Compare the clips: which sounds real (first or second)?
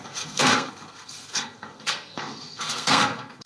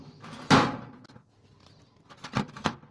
second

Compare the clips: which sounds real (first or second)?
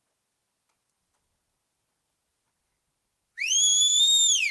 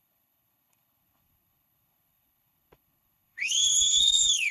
first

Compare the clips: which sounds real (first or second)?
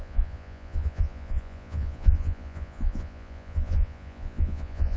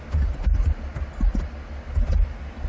second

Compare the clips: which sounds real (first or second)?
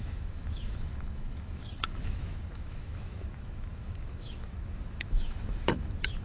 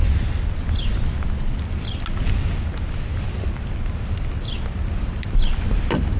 second